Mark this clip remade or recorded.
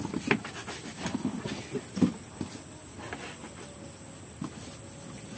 recorded